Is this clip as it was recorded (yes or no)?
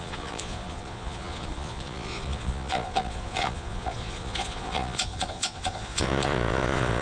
no